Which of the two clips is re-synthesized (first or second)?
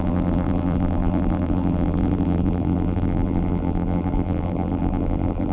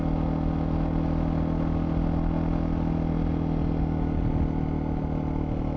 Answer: first